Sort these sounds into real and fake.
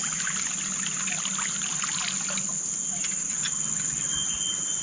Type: real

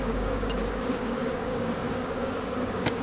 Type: fake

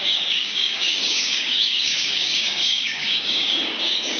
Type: fake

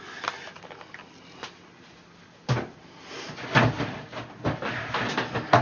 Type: real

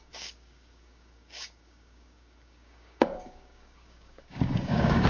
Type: fake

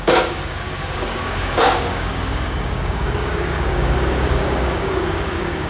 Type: fake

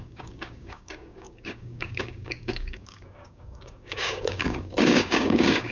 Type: fake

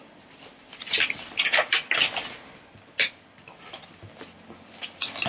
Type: real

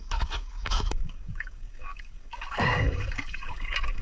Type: fake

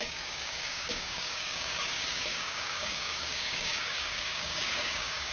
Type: fake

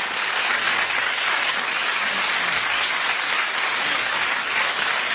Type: fake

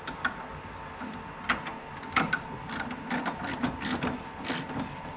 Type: real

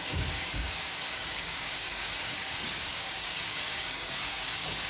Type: fake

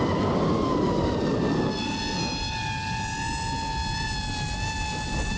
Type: real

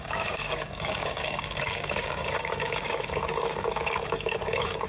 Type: fake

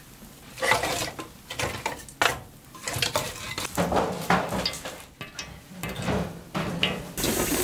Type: real